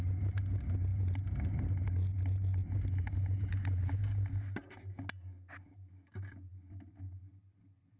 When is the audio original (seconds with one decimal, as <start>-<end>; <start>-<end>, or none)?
0.0-8.0

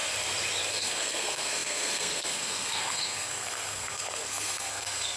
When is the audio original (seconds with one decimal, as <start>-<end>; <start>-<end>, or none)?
0.0-0.7

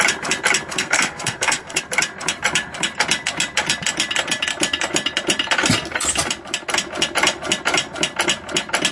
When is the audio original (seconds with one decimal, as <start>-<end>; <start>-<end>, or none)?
0.0-0.7; 1.8-8.9

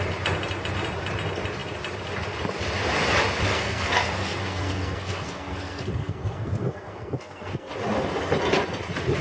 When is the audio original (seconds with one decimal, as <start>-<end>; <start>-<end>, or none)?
0.0-3.5; 7.7-9.2

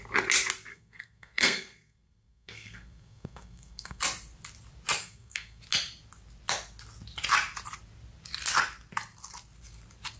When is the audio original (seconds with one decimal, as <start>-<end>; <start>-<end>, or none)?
0.0-0.7; 4.0-5.0; 5.6-10.2